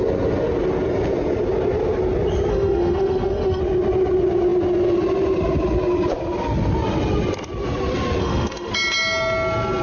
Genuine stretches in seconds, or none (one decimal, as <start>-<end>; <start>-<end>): 0.0-2.5; 3.6-8.2; 8.7-9.8